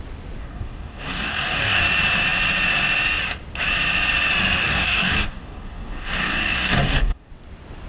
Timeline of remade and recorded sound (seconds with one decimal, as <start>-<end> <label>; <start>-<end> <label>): 0.0-0.4 recorded; 0.4-1.8 remade; 1.8-4.6 recorded; 4.6-7.3 remade; 7.3-7.9 recorded